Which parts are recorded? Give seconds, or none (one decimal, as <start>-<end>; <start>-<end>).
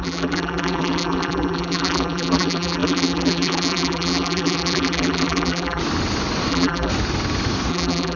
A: 5.8-6.5; 6.9-7.7